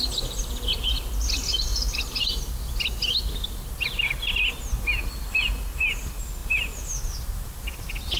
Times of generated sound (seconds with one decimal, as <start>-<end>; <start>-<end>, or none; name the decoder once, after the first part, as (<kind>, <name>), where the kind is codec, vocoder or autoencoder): none